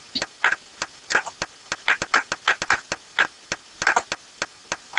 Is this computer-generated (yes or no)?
no